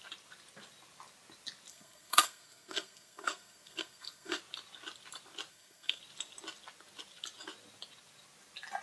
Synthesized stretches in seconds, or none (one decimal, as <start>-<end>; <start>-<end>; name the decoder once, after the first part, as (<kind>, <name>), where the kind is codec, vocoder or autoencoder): 1.7-4.4 (codec, SNAC); 5.5-6.0